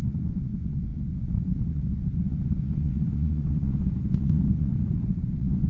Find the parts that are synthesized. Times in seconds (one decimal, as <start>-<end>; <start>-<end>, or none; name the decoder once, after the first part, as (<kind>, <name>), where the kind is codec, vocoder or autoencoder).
0.0-4.7 (vocoder, Vocos); 5.2-5.7